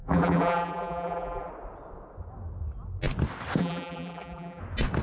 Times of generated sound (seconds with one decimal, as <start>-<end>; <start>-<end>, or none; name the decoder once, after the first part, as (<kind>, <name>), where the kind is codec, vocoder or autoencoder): 0.0-1.5 (vocoder, BigVGAN v2); 3.6-4.6